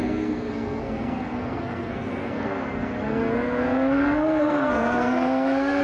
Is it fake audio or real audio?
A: fake